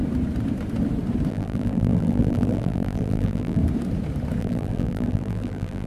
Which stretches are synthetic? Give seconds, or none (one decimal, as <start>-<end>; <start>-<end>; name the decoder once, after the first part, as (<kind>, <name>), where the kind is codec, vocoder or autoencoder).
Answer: 1.3-3.6 (vocoder, BigVGAN v2); 4.4-5.9